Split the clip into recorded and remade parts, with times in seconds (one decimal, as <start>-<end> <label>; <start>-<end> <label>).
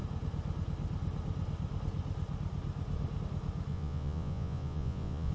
0.0-3.7 recorded; 3.7-5.3 remade